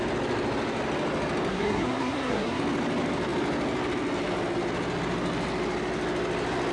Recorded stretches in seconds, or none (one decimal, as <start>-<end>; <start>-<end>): 0.0-1.5; 2.6-6.7